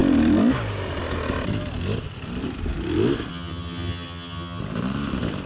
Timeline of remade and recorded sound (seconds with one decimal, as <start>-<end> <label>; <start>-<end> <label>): 0.0-3.3 recorded; 3.3-4.6 remade; 4.6-5.5 recorded